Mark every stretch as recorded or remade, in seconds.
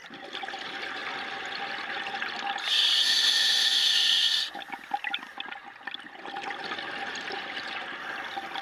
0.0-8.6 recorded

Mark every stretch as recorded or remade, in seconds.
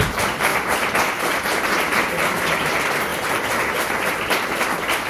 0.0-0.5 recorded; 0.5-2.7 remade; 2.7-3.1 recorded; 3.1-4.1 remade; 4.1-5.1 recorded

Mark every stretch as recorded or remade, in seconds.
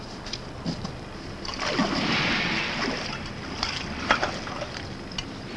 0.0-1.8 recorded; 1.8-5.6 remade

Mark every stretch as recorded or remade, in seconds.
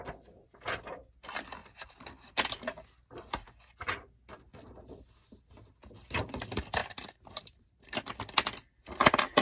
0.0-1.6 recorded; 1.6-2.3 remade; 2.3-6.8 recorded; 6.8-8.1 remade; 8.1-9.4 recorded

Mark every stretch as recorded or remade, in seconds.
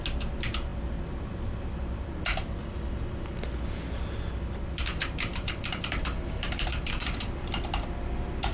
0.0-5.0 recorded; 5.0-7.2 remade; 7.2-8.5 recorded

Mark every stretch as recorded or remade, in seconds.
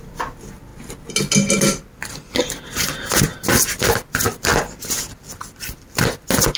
0.0-0.7 remade; 0.7-2.3 recorded; 2.3-3.3 remade; 3.3-3.9 recorded; 3.9-4.5 remade; 4.5-5.3 recorded; 5.3-6.6 remade